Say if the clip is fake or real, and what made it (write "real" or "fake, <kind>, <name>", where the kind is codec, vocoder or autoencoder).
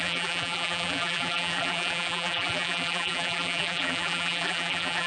fake, vocoder, BigVGAN v2